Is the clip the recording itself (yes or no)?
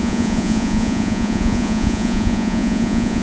no